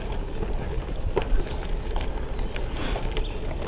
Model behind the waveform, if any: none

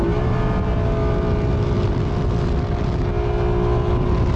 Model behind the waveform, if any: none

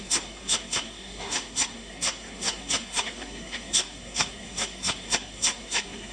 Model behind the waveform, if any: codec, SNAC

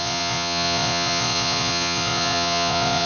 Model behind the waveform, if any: vocoder, Vocos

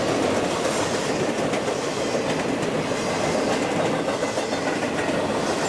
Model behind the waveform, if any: none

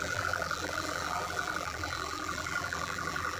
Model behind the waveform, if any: vocoder, BigVGAN v2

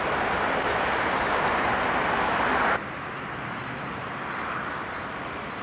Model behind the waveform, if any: vocoder, BigVGAN v2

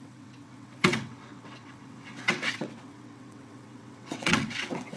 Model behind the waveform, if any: vocoder, WaveNeXt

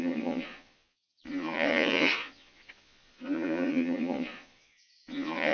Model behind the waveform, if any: vocoder, Vocos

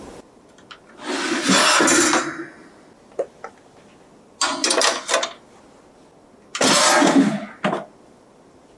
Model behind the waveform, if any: none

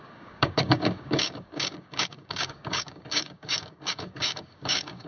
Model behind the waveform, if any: codec, DAC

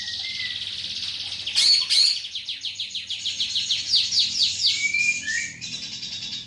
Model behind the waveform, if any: none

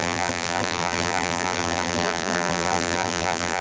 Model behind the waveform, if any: vocoder, BigVGAN v2